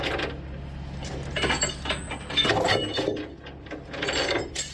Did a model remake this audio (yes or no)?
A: no